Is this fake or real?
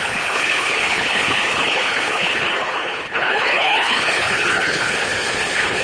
fake